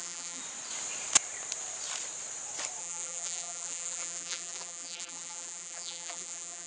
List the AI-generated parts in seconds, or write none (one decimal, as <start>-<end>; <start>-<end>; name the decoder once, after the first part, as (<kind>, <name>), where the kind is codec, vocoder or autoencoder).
0.0-0.4 (vocoder, BigVGAN v2); 2.8-6.7